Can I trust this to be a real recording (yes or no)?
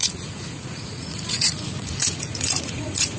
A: no